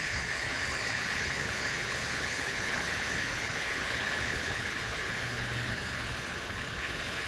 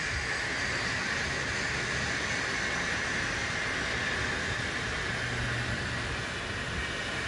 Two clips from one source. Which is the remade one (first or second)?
first